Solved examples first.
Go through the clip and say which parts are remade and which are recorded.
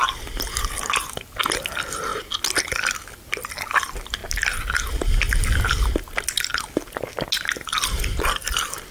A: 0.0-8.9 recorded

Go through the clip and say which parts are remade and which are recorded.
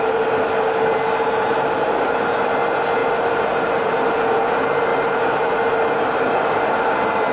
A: 0.0-7.3 recorded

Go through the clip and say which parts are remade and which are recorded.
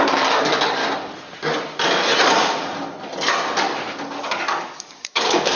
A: 0.0-0.8 remade; 0.8-4.2 recorded; 4.2-5.6 remade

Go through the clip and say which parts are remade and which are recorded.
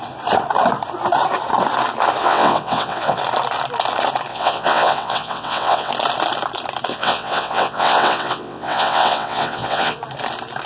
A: 0.0-2.2 recorded; 2.2-3.2 remade; 3.2-4.3 recorded; 4.3-5.9 remade; 5.9-6.9 recorded; 6.9-10.0 remade; 10.0-10.7 recorded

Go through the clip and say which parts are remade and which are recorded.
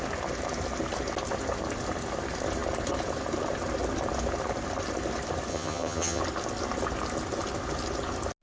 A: 0.0-5.5 recorded; 5.5-6.2 remade; 6.2-8.4 recorded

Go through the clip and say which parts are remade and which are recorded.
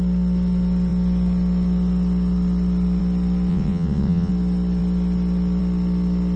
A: 0.0-3.5 recorded; 3.5-4.3 remade; 4.3-6.4 recorded